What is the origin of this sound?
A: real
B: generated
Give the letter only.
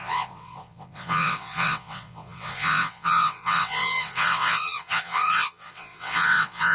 B